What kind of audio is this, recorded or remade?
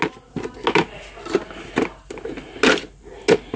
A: recorded